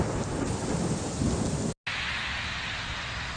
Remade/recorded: recorded